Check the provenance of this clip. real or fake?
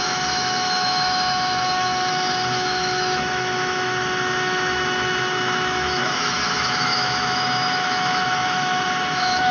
fake